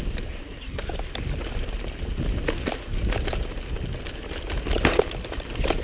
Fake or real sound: real